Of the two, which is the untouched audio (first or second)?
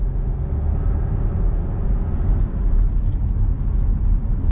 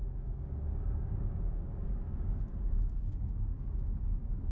first